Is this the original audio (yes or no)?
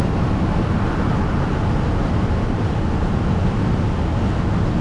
yes